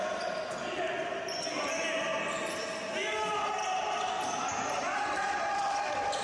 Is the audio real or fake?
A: real